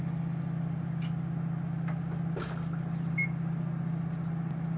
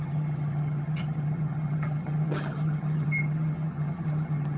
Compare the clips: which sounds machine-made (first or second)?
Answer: second